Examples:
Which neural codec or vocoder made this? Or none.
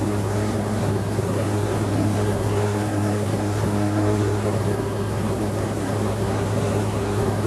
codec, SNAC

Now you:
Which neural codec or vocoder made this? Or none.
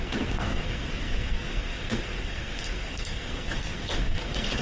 codec, SNAC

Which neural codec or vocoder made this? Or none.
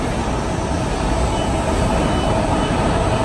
none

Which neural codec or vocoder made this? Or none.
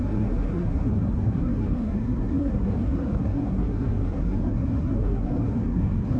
codec, SNAC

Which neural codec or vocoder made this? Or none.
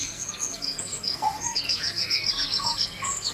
codec, SNAC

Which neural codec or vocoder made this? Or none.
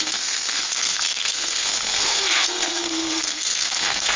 codec, SNAC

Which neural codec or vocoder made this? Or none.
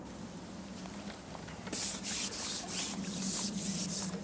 none